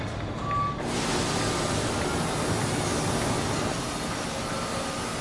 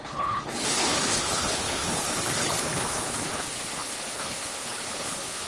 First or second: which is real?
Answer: first